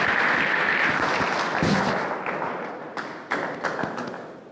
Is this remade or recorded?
recorded